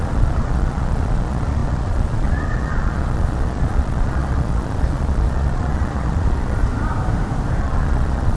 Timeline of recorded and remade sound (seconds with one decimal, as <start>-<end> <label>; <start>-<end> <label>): 0.0-6.7 remade; 6.7-7.6 recorded; 7.6-8.4 remade